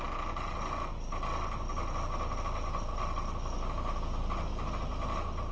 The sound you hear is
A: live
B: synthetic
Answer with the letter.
A